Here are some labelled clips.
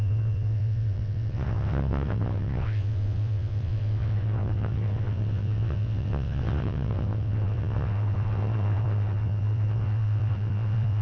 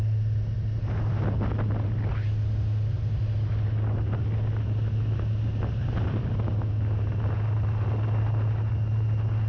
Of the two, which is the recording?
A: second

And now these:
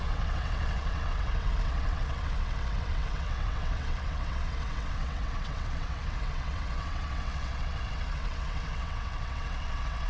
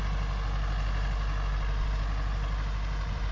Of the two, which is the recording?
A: second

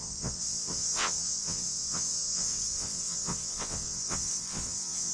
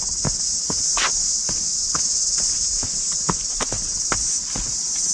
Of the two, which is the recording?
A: second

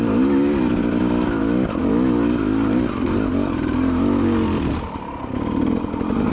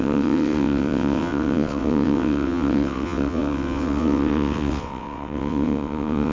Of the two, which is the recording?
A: first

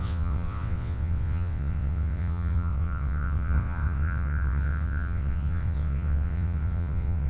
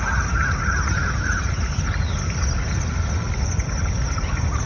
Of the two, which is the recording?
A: second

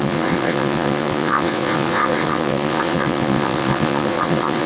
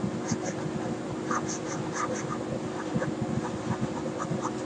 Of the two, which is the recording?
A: second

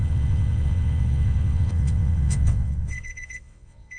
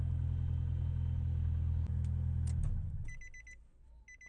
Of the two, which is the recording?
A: second